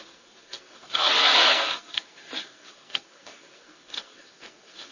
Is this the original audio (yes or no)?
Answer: no